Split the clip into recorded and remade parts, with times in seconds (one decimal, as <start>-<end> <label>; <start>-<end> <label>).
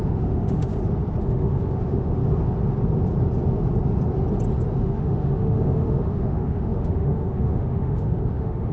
0.0-0.7 remade; 0.7-1.2 recorded; 1.2-2.2 remade; 2.2-4.8 recorded; 4.8-8.7 remade